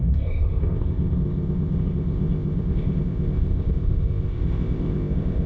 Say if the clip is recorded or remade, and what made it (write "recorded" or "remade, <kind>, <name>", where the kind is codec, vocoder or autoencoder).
remade, codec, ZipCodec